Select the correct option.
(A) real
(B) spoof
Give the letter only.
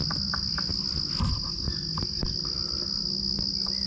A